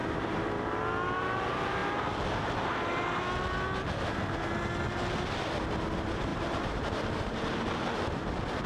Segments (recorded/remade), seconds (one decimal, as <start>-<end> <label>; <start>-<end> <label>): 0.0-0.8 remade; 0.8-6.3 recorded; 6.3-7.6 remade; 7.6-8.7 recorded